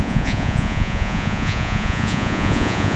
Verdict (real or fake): fake